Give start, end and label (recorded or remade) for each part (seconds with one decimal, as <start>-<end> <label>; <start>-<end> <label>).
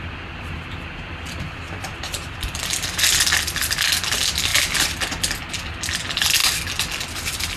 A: 0.0-7.6 recorded